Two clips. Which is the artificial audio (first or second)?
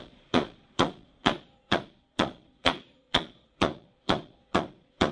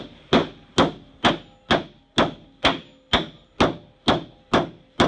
first